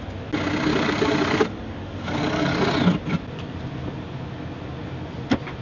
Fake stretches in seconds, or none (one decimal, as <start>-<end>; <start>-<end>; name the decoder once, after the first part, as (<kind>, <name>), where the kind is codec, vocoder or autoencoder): 0.7-2.6 (codec, DAC)